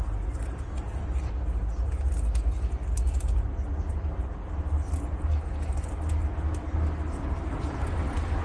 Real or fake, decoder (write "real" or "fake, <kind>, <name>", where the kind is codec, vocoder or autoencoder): real